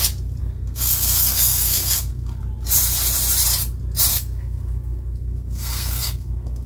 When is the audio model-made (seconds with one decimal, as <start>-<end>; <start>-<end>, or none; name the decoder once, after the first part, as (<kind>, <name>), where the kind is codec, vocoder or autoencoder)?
0.4-2.4 (codec, SNAC); 4.1-6.7